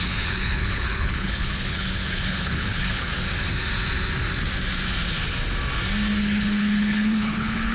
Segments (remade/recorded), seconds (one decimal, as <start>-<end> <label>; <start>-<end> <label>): 0.0-3.1 remade; 3.1-6.2 recorded; 6.2-7.7 remade